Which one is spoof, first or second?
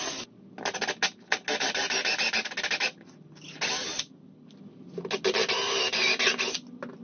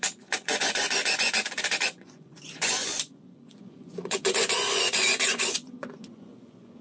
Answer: second